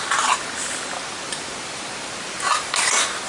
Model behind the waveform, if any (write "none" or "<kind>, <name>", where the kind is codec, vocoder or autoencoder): none